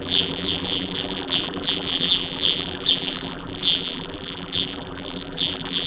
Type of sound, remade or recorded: remade